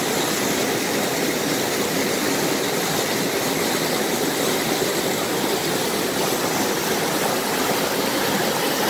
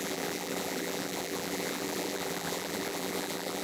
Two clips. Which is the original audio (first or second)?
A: first